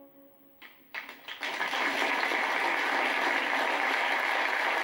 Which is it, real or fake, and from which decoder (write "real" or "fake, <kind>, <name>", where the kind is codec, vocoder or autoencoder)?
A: real